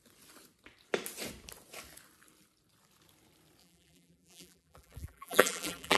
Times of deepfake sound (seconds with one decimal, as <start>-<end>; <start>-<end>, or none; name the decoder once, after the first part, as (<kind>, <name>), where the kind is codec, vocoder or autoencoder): 3.6-6.0 (vocoder, BigVGAN v2)